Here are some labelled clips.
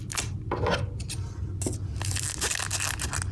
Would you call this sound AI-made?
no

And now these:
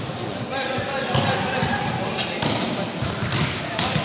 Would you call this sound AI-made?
no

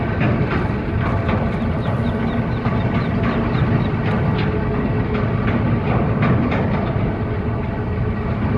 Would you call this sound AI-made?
no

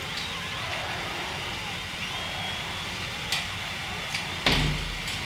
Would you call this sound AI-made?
no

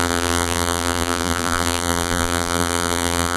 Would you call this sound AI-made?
yes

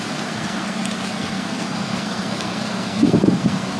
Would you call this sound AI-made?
yes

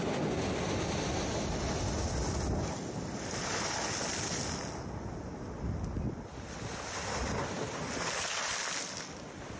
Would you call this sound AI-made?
no